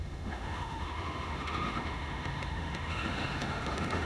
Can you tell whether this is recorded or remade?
remade